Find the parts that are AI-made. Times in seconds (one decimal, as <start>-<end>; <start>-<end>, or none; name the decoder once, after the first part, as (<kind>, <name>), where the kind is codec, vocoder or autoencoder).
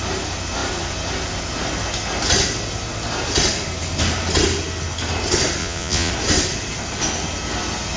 5.6-6.1 (vocoder, Vocos)